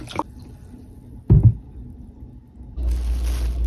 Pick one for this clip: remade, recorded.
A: recorded